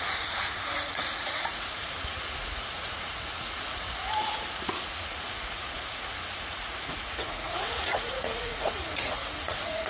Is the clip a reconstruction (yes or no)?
yes